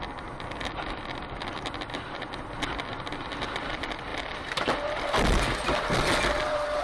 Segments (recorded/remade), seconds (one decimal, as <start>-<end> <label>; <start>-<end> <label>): 0.0-6.8 recorded